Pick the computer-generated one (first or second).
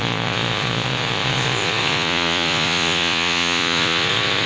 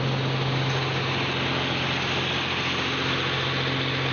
first